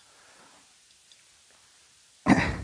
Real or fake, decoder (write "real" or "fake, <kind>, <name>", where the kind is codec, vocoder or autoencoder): real